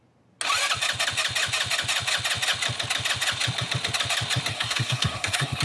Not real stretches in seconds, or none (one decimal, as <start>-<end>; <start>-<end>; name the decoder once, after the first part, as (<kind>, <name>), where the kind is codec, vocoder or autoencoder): 4.5-5.6 (codec, SNAC)